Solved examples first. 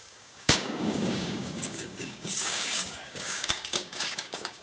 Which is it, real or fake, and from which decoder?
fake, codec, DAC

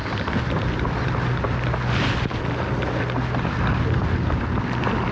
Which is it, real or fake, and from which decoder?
real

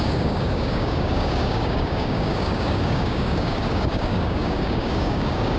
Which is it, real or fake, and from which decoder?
fake, codec, DAC